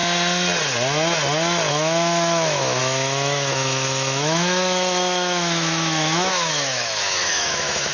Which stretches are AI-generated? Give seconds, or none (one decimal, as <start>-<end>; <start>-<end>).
1.7-7.9